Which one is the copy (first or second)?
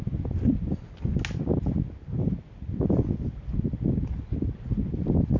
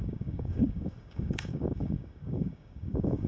second